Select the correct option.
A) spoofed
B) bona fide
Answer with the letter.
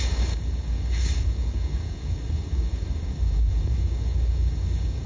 A